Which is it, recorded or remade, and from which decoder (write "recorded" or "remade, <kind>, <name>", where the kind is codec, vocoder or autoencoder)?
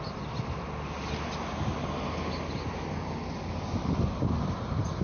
recorded